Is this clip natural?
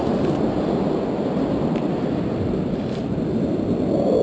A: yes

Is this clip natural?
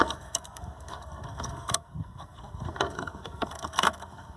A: no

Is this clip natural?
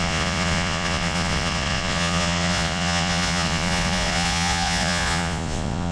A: no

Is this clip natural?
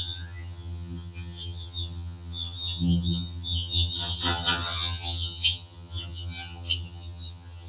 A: no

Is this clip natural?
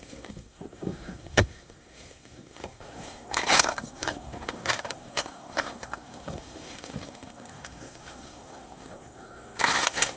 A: no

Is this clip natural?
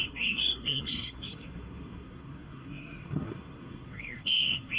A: no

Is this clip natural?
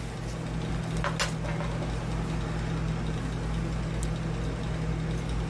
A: yes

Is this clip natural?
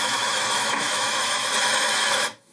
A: no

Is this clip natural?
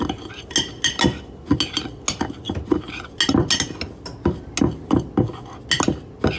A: yes